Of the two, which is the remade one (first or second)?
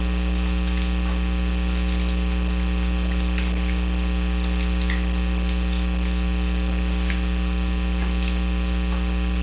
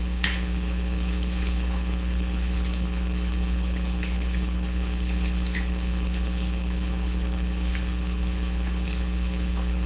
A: second